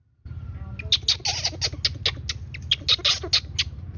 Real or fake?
real